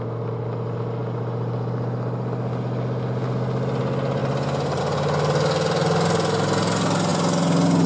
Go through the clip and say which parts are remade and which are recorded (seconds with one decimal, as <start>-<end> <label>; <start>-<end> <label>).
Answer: 0.0-7.9 recorded